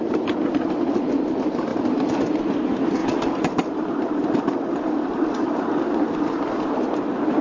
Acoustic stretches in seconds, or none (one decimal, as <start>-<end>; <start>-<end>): 0.0-7.4

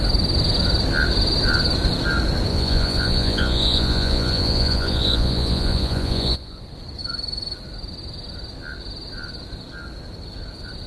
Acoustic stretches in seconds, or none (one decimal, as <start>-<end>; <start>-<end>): 0.0-2.5; 6.6-10.9

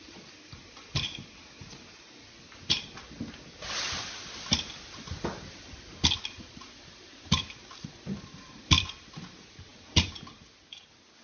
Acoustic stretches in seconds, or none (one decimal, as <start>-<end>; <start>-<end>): 0.0-11.2

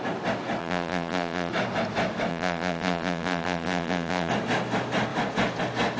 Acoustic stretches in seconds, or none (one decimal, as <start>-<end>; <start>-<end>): 0.0-0.6; 1.5-2.3; 4.3-6.0

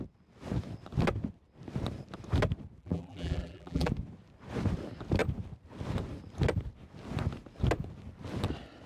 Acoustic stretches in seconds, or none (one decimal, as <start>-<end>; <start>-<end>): 0.0-2.8; 3.9-8.9

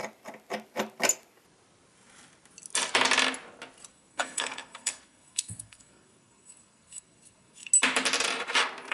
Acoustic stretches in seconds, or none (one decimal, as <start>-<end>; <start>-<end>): 0.0-3.9; 7.7-8.9